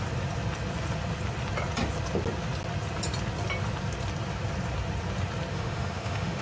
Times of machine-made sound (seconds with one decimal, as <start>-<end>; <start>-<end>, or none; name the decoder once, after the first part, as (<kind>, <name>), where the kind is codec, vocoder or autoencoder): 5.5-6.4 (autoencoder, DAC-VAE)